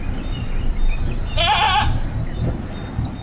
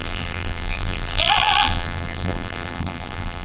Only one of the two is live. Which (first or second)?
first